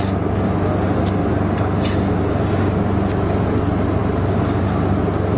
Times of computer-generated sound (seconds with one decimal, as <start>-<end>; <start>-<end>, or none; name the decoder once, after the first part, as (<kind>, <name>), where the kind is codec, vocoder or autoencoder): none